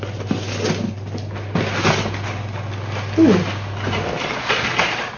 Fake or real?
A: real